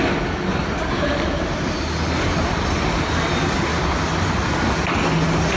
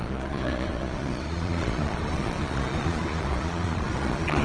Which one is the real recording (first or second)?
first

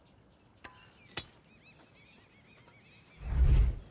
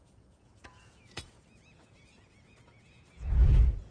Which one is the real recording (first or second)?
first